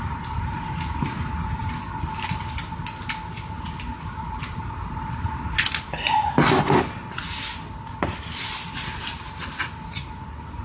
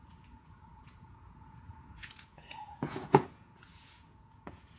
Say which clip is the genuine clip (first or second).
first